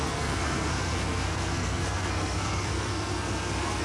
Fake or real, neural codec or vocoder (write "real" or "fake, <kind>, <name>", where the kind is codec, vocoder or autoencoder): fake, codec, SNAC